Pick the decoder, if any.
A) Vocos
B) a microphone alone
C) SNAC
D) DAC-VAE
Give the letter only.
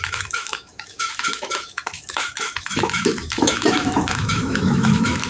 D